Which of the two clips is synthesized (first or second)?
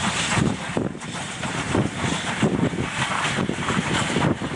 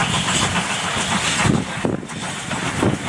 first